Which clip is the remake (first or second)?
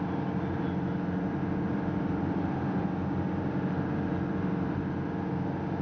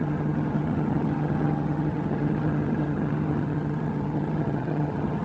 second